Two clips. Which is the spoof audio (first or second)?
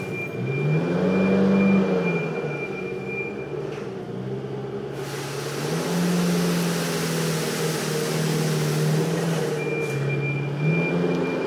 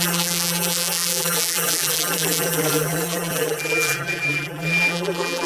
second